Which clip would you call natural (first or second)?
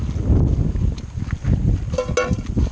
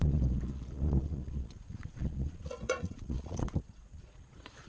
first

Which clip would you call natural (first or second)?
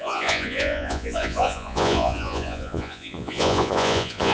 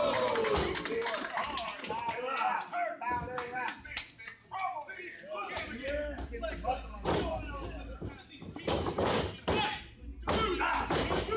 second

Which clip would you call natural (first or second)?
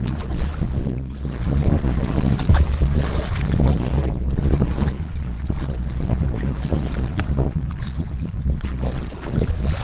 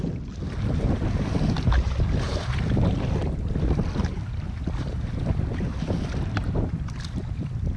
second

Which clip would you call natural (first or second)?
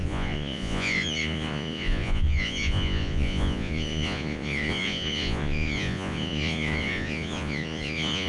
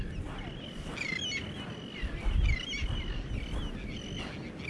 second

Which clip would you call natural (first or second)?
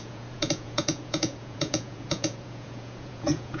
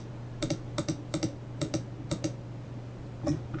second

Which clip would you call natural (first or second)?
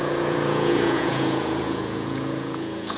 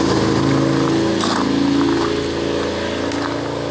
second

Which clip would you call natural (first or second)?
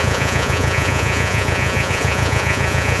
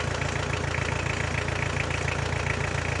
second